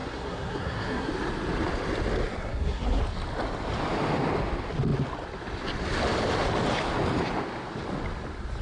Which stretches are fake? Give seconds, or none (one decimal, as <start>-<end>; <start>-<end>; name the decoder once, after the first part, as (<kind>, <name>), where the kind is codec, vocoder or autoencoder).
0.0-1.1 (codec, SNAC); 2.4-3.0